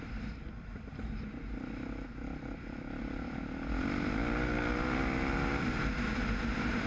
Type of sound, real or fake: real